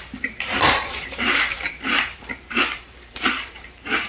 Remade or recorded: remade